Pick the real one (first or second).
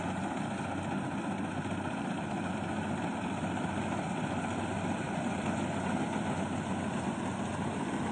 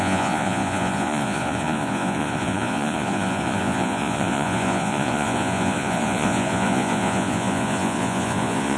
first